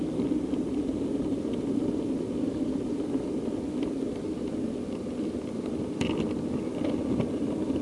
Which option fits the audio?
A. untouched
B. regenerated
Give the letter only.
A